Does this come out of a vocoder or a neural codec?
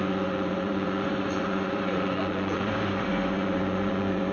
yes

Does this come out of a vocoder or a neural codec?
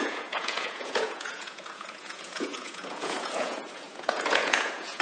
yes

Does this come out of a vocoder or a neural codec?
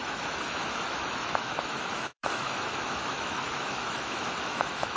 yes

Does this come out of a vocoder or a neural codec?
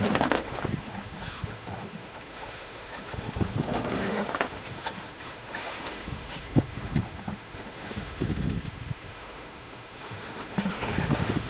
yes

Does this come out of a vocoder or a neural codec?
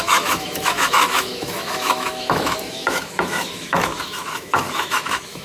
yes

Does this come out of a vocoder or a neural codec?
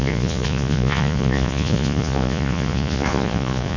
yes